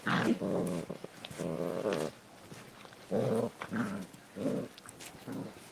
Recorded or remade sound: recorded